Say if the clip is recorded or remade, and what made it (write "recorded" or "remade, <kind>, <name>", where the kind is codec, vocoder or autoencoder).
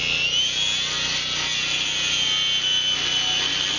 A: recorded